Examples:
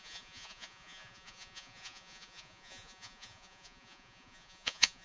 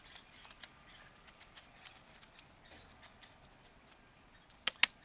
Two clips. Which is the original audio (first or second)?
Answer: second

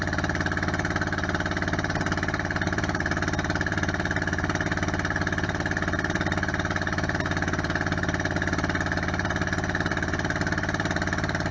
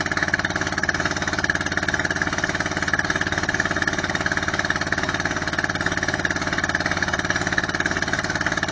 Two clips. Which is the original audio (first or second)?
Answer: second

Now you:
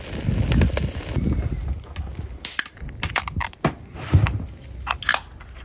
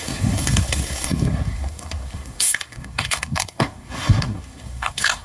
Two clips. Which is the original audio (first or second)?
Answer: first